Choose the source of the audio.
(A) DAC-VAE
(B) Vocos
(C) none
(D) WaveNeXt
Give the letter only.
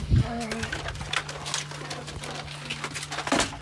C